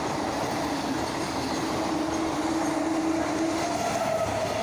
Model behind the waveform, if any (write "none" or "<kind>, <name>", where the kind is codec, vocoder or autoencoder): none